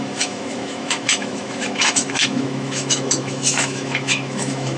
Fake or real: fake